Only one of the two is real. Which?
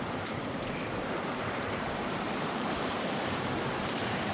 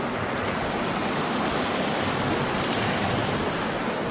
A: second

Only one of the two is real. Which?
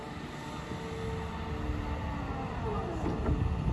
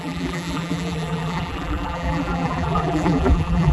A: first